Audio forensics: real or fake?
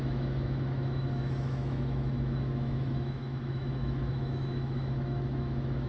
fake